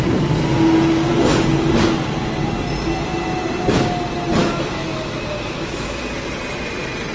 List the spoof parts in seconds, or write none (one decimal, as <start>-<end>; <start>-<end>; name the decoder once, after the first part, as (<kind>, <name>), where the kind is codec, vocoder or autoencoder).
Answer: 4.4-6.0 (autoencoder, DAC-VAE)